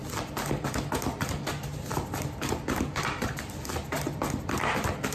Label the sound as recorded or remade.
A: recorded